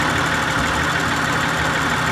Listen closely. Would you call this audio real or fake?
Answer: real